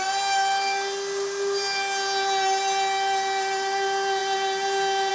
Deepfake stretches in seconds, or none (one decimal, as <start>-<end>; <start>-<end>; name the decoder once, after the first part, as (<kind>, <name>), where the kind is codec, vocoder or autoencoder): none